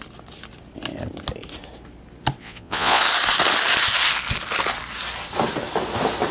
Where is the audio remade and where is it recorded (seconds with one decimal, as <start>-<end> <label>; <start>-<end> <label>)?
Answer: 0.0-2.4 recorded; 2.4-3.0 remade; 3.0-6.3 recorded